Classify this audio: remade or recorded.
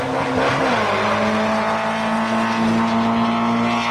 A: recorded